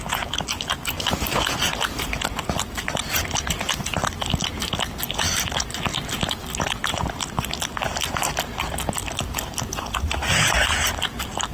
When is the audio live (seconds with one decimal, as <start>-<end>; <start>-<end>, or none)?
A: 0.0-11.5

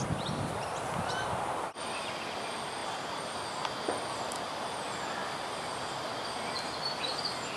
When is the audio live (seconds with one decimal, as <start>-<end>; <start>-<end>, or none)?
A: 0.0-7.6

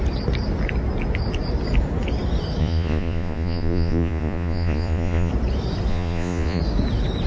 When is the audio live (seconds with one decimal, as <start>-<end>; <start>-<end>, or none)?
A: 0.0-2.6; 5.3-5.9; 6.6-7.3